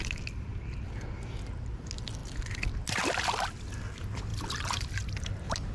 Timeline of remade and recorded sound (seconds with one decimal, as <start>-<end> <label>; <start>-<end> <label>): 0.0-4.3 recorded; 4.3-5.3 remade; 5.3-5.7 recorded